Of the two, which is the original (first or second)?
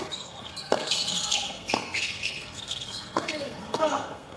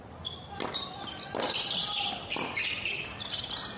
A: second